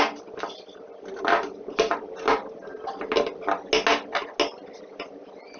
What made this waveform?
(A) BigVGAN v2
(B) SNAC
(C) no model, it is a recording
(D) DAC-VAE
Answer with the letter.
C